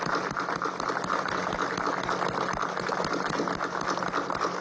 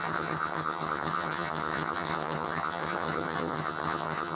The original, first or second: first